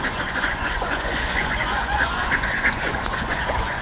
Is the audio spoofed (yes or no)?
yes